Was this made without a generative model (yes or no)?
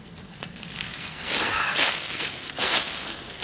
no